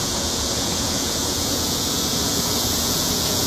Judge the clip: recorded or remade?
remade